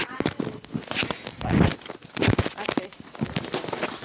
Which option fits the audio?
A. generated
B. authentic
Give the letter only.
B